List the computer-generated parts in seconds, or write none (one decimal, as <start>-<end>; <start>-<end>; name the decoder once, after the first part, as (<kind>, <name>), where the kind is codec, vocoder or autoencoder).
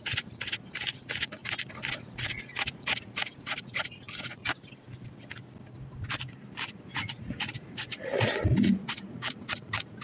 0.0-1.4 (vocoder, Vocos); 1.9-4.4; 6.7-10.0